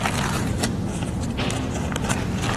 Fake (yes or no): no